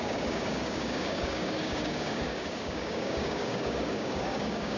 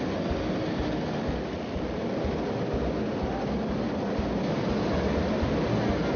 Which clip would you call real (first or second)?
second